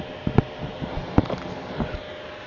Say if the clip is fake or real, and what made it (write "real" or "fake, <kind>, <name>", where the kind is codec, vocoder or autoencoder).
real